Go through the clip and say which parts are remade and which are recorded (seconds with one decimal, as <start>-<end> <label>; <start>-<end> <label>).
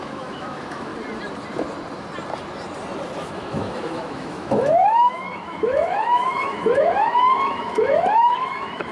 0.0-0.9 remade; 0.9-3.2 recorded; 3.2-8.9 remade